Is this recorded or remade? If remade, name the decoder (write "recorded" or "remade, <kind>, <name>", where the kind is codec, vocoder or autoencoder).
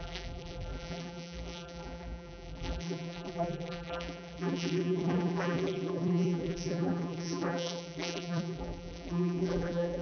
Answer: remade, vocoder, BigVGAN v2